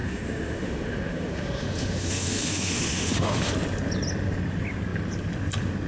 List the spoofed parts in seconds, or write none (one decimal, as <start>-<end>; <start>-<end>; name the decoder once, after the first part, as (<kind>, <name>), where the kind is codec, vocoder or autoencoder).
0.0-3.5 (autoencoder, DAC-VAE)